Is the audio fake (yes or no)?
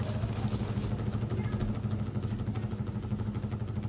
no